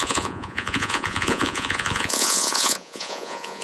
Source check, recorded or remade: remade